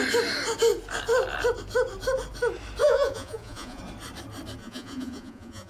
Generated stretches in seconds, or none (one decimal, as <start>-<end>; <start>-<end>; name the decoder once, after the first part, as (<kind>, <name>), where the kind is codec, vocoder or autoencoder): 2.8-3.8 (vocoder, Vocos); 4.6-5.7